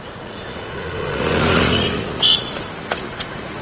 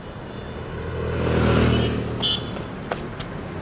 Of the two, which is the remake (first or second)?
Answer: first